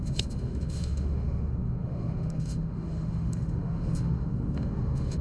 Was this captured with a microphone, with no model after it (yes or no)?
no